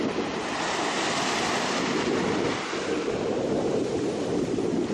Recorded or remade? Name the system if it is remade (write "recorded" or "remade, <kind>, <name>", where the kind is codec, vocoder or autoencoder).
recorded